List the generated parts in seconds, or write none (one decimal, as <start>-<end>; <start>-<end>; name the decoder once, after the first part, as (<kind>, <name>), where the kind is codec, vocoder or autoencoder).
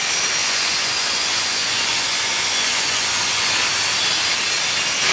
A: 0.4-3.5 (vocoder, Vocos)